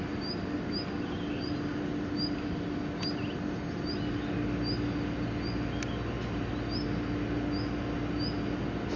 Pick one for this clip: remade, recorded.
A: recorded